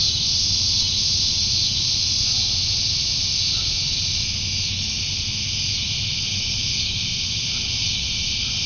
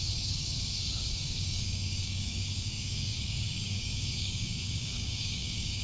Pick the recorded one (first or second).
first